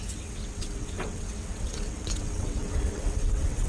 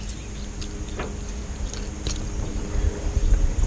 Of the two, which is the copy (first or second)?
first